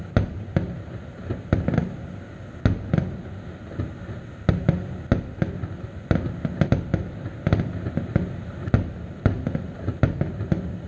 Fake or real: real